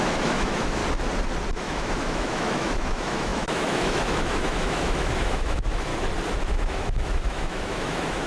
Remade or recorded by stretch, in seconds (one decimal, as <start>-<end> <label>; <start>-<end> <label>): 0.0-0.8 remade; 0.8-1.5 recorded; 1.5-5.9 remade; 5.9-6.5 recorded; 6.5-8.3 remade